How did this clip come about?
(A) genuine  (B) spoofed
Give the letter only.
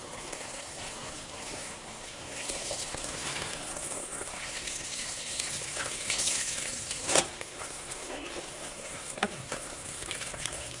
B